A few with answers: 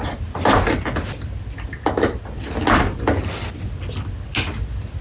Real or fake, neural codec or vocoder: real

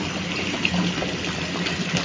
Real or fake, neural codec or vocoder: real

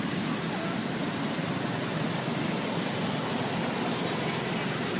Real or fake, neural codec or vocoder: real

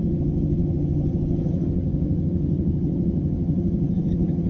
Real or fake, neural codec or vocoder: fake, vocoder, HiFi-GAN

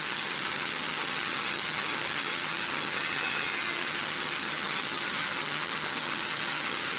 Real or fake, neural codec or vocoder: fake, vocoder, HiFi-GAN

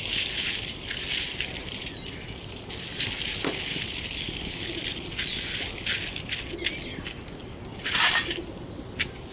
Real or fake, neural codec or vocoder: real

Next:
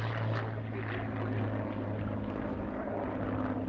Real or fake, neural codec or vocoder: real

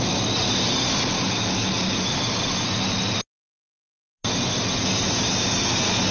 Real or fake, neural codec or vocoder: real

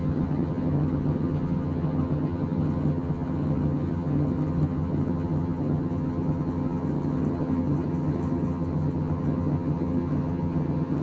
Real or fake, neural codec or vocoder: fake, vocoder, HiFi-GAN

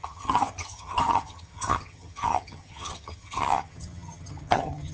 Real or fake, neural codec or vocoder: fake, vocoder, HiFi-GAN